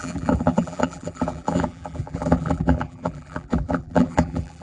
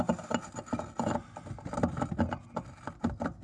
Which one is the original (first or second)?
second